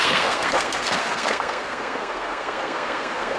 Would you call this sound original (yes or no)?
no